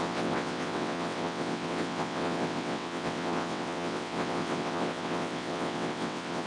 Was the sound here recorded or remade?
remade